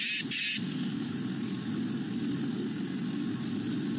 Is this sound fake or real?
real